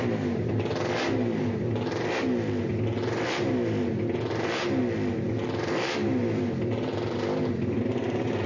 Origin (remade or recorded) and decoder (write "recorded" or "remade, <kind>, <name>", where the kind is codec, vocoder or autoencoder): recorded